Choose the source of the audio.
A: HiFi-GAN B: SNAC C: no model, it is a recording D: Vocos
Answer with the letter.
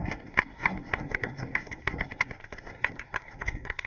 B